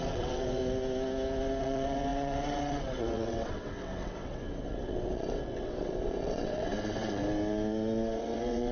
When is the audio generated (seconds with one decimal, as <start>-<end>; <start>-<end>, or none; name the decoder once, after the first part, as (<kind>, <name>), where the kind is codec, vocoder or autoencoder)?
0.0-0.6 (vocoder, WaveNeXt); 1.6-7.2; 8.2-8.7

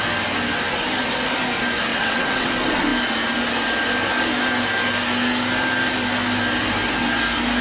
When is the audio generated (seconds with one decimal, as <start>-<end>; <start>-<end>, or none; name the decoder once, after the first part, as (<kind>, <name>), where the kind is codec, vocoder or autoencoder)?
1.9-2.5 (vocoder, WaveNeXt)